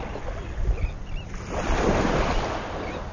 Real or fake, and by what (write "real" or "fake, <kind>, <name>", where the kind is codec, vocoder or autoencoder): real